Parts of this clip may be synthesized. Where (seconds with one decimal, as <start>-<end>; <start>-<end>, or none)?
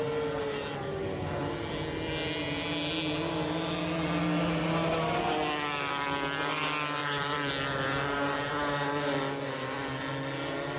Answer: 7.0-7.5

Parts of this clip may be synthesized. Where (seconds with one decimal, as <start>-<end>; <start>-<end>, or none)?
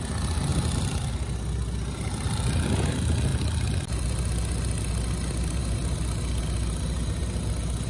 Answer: none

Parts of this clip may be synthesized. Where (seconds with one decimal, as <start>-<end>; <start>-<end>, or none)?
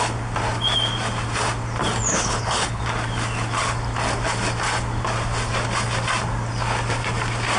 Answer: 2.1-2.8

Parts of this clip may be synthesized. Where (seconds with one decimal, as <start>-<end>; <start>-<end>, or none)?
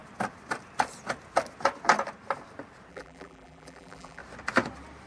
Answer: 2.9-4.2